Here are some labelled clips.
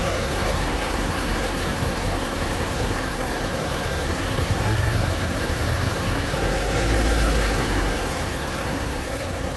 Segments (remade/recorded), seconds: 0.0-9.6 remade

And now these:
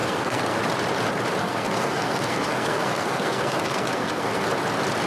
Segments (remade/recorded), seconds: 0.0-0.6 remade; 0.6-1.4 recorded; 1.4-4.5 remade; 4.5-5.1 recorded

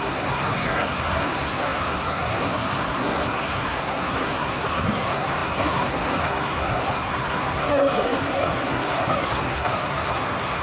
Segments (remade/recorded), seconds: 0.0-10.6 remade

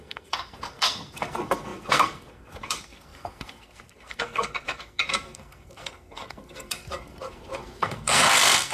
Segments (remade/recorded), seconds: 0.0-8.7 remade